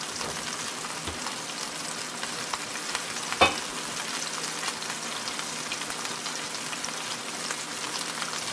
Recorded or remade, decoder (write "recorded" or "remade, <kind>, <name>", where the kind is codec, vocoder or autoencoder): recorded